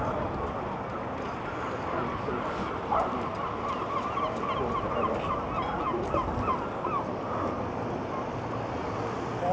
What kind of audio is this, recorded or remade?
recorded